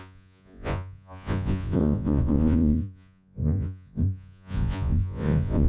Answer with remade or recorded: remade